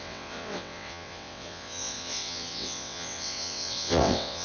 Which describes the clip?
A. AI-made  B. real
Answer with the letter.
A